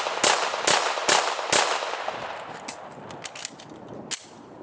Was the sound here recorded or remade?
recorded